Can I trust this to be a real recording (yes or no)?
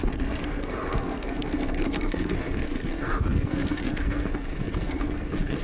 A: no